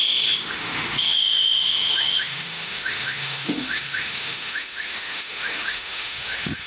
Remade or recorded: remade